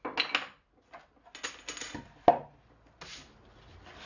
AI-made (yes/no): no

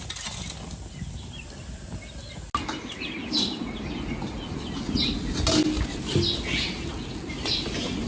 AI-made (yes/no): no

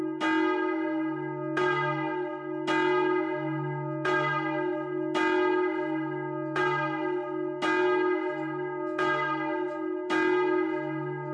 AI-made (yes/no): no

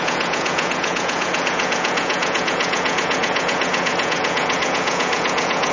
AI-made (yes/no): yes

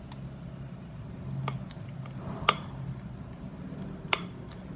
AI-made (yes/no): no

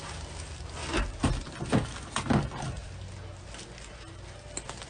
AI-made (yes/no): no